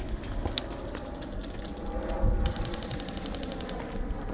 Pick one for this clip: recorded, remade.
recorded